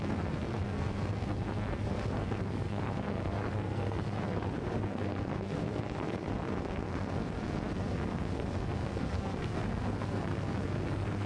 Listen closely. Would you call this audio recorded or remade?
remade